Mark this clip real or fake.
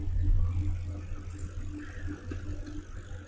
real